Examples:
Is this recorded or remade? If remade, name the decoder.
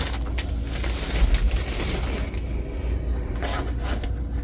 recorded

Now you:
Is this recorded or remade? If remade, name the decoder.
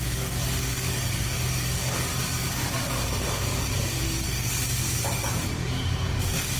remade, codec, DAC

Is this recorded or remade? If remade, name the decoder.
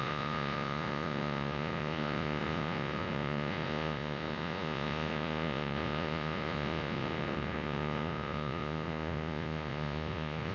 remade, vocoder, Vocos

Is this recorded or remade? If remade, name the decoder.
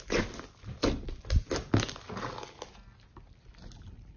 recorded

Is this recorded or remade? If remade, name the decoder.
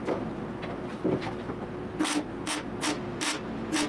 recorded